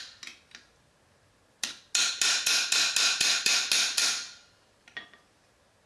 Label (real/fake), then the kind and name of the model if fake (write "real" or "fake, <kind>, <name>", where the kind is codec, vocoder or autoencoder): real